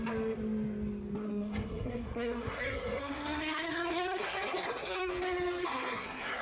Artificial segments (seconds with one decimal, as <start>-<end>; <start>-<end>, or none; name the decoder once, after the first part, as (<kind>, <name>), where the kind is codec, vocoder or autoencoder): 1.3-5.1 (codec, SNAC); 5.6-6.4